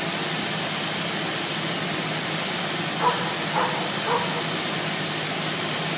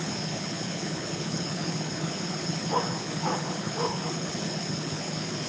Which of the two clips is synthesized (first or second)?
second